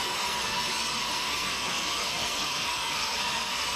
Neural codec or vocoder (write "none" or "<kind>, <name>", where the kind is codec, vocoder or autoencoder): codec, SNAC